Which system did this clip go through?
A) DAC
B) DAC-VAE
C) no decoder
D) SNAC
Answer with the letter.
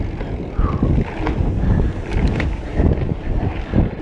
C